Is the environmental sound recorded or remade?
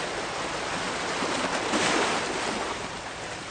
recorded